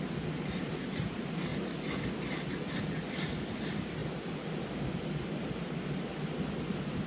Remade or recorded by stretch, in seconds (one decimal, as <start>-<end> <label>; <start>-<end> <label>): 0.0-7.1 recorded

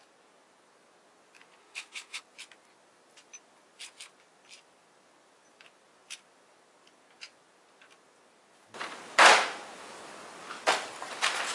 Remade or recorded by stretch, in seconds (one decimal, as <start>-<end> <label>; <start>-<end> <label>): 0.0-1.6 recorded; 1.6-2.2 remade; 2.2-11.5 recorded

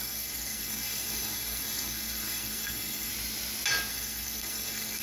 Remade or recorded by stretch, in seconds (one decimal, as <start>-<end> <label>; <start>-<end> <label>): 0.0-3.1 remade; 3.1-3.9 recorded; 3.9-5.0 remade

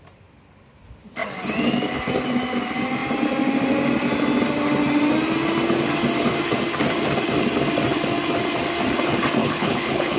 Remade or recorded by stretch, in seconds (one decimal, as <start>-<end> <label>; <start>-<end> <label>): 0.0-9.4 recorded; 9.4-10.2 remade

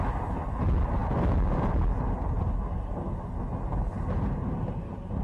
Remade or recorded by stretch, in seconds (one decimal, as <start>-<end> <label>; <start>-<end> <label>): 0.0-5.2 recorded